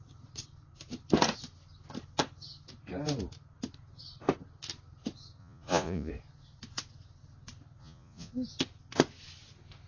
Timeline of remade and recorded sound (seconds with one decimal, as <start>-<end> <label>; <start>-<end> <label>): 0.0-5.4 recorded; 5.4-6.1 remade; 6.1-7.8 recorded; 7.8-8.3 remade; 8.3-9.9 recorded